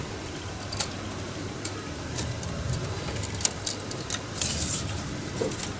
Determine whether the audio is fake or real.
real